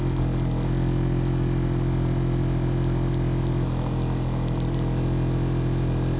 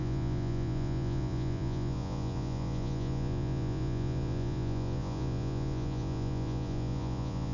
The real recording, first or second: first